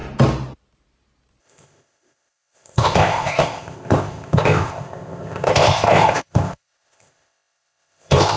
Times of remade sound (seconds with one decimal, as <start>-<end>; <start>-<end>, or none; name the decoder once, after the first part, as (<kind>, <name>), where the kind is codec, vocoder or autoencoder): 1.4-8.4 (codec, ZipCodec)